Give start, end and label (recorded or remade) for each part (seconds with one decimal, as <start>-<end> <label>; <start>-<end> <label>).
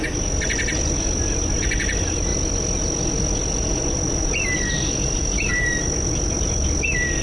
0.0-7.2 recorded